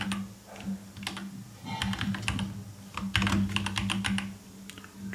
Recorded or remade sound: recorded